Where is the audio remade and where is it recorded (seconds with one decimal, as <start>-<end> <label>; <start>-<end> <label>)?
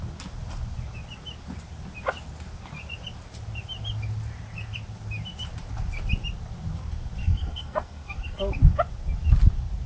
0.0-7.2 recorded; 7.2-8.4 remade; 8.4-9.9 recorded